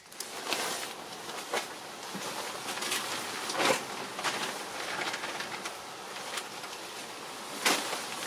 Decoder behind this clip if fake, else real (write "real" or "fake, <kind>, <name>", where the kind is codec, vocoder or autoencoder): real